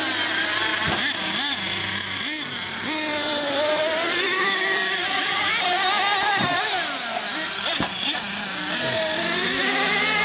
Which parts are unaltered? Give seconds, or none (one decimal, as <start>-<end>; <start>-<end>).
0.0-0.7; 5.5-10.2